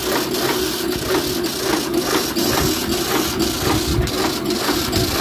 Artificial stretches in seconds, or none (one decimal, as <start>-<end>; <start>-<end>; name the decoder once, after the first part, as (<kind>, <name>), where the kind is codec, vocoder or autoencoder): none